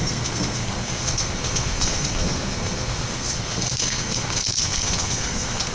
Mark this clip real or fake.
fake